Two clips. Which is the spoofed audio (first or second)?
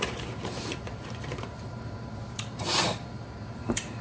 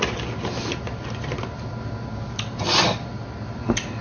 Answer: first